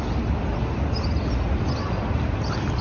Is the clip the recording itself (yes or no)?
yes